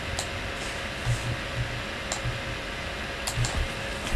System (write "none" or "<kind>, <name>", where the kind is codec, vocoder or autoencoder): none